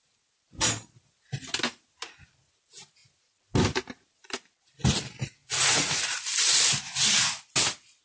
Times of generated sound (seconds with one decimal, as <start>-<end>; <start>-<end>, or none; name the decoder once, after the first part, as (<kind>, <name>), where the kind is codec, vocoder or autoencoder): 5.4-6.0 (vocoder, Vocos)